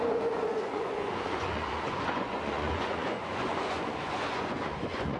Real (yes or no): no